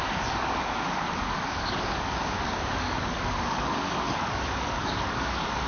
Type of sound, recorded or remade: remade